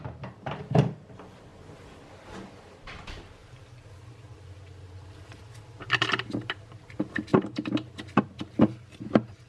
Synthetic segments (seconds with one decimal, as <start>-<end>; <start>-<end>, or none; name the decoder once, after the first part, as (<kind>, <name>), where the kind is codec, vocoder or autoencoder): 0.0-1.5 (vocoder, BigVGAN v2); 2.5-7.3; 8.2-9.5